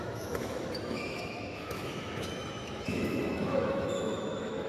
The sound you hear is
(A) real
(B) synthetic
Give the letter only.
B